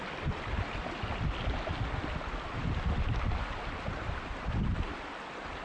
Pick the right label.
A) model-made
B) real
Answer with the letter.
B